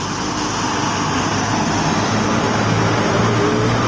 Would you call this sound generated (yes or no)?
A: no